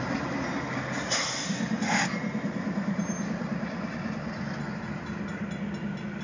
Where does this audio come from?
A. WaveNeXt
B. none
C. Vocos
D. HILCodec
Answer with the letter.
B